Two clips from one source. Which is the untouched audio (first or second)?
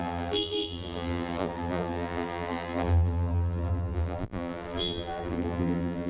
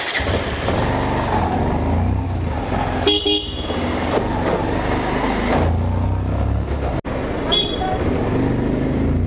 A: second